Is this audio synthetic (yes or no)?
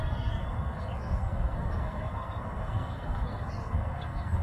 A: yes